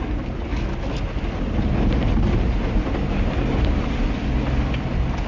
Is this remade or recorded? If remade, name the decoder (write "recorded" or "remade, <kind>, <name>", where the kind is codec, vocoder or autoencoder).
recorded